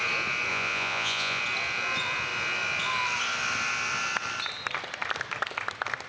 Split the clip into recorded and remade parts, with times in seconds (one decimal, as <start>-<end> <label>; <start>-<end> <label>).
0.0-0.5 recorded; 0.5-1.4 remade; 1.4-6.1 recorded